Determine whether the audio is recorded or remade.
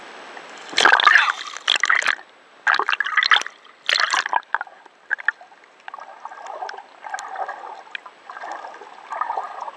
recorded